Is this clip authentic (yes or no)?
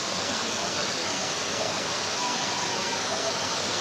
no